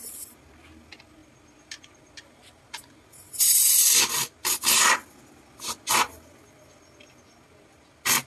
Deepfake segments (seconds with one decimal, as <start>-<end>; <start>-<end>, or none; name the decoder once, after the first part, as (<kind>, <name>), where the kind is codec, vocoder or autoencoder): none